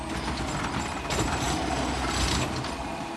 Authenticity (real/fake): real